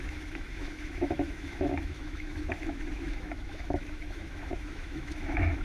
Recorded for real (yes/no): no